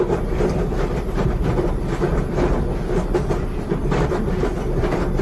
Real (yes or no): no